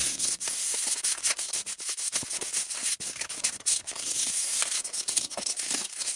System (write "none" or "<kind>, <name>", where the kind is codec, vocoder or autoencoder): codec, SNAC